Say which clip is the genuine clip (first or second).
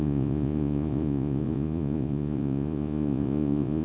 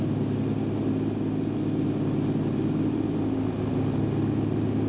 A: second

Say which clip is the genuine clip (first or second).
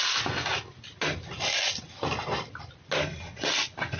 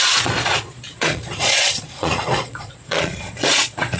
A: first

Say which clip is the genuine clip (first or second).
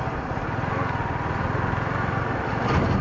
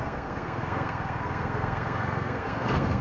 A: first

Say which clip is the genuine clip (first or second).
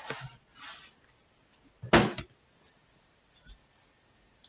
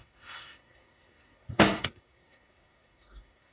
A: first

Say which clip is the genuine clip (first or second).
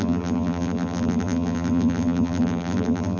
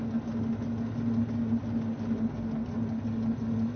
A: second